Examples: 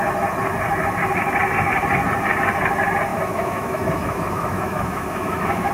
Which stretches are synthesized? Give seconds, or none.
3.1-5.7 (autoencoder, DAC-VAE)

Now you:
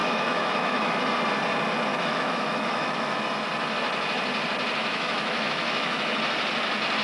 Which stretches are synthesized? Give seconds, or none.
0.0-1.0 (autoencoder, DAC-VAE); 1.9-3.2; 4.8-6.2

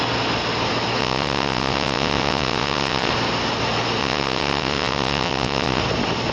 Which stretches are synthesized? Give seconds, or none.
1.0-3.1 (vocoder, WaveNeXt); 4.0-5.8

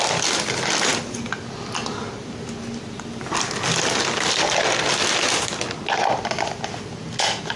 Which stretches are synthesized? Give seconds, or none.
none

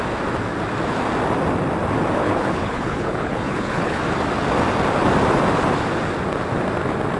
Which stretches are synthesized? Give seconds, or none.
2.2-4.0 (codec, HILCodec)